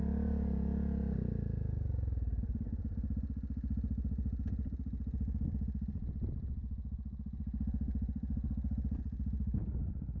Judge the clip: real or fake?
real